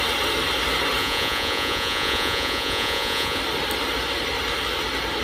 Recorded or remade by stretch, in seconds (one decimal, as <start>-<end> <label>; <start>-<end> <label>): 0.0-1.0 recorded; 1.0-3.4 remade; 3.4-5.2 recorded